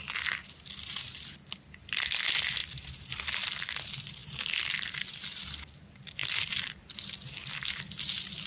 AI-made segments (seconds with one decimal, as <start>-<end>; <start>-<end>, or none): none